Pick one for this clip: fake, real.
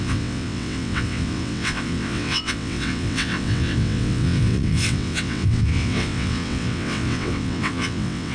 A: fake